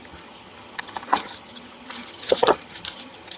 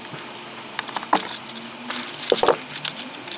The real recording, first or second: second